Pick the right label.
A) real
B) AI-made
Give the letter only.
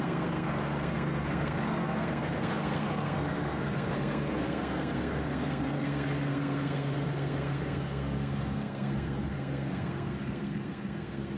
B